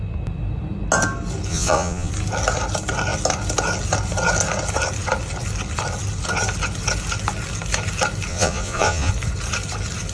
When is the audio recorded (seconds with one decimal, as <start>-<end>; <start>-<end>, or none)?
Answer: 0.0-1.5; 2.1-8.3; 9.1-10.1